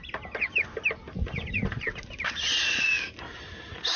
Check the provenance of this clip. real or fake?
real